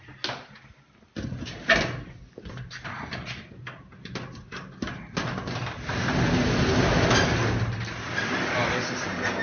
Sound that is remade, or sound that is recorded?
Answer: recorded